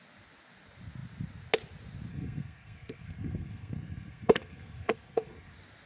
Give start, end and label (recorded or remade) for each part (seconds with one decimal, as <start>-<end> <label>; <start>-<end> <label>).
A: 0.0-2.1 recorded; 2.1-5.5 remade; 5.5-5.9 recorded

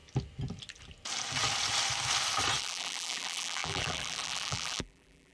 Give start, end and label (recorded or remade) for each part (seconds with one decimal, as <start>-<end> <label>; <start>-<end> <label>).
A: 0.0-2.6 recorded; 2.6-5.3 remade

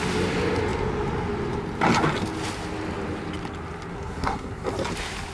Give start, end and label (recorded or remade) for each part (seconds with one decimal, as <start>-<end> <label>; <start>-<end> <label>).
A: 0.0-3.9 recorded; 3.9-4.5 remade; 4.5-5.3 recorded

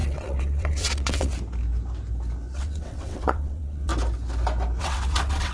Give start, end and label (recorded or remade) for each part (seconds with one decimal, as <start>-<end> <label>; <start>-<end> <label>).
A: 0.0-1.3 remade; 1.3-2.5 recorded; 2.5-3.9 remade; 3.9-4.8 recorded; 4.8-5.5 remade

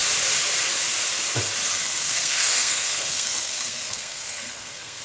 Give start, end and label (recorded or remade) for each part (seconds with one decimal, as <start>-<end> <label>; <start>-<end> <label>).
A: 0.0-1.7 recorded; 1.7-5.0 remade

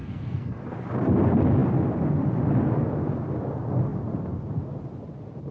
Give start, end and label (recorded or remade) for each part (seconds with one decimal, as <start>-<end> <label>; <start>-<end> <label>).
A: 0.0-0.6 remade; 0.6-5.5 recorded